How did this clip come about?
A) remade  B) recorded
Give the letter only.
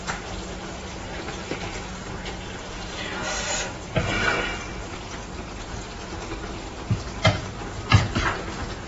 B